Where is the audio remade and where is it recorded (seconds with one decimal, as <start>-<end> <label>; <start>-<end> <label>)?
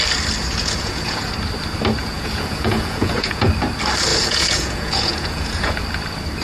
0.0-0.4 recorded; 0.4-1.3 remade; 1.3-2.0 recorded; 2.0-3.5 remade; 3.5-4.1 recorded; 4.1-5.8 remade; 5.8-6.4 recorded